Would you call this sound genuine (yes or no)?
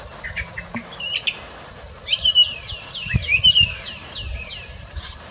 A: yes